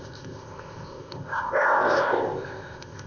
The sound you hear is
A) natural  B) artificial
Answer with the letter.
B